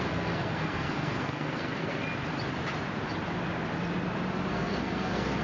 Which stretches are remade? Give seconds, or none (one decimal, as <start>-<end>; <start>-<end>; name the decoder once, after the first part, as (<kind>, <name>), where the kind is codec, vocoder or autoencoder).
0.0-2.0 (codec, SNAC); 4.5-5.4